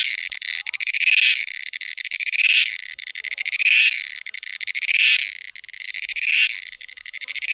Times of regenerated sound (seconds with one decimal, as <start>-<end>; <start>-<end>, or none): 0.0-5.2; 5.8-7.5